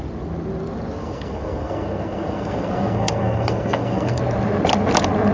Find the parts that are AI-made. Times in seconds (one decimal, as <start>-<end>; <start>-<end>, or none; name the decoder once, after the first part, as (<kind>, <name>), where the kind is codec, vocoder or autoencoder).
1.0-4.2 (codec, SNAC)